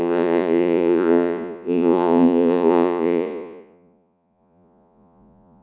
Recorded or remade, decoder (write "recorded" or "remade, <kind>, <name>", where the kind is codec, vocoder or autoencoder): remade, vocoder, Vocos